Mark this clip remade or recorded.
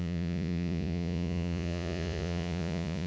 remade